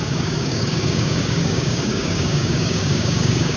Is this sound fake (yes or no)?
yes